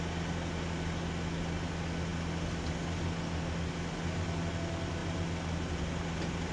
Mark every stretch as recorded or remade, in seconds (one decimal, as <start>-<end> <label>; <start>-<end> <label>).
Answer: 0.0-6.5 recorded